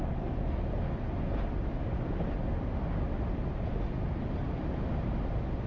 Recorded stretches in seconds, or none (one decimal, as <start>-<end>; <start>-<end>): 0.6-5.7